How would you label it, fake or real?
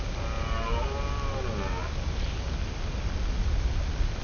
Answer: real